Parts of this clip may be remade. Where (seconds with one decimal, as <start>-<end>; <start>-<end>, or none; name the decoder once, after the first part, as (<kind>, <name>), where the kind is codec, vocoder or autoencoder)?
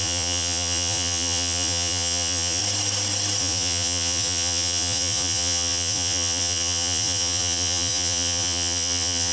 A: 0.0-2.6 (vocoder, Vocos); 3.4-9.3